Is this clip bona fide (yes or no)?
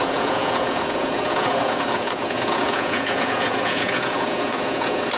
no